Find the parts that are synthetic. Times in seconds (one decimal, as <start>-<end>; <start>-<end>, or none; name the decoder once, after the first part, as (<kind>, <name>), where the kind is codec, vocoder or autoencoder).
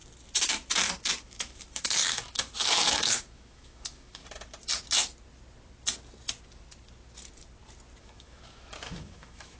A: 1.2-4.2 (autoencoder, DAC-VAE); 8.0-9.6